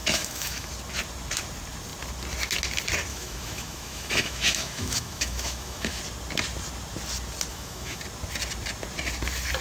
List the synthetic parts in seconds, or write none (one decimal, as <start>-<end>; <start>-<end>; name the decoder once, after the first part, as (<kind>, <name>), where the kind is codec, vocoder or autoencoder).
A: 0.0-0.7 (autoencoder, DAC-VAE); 3.1-6.0; 7.5-8.0